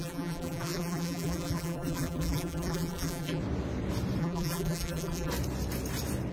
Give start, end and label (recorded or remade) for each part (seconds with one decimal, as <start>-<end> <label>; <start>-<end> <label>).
0.0-3.4 remade; 3.4-4.2 recorded; 4.2-5.3 remade; 5.3-6.3 recorded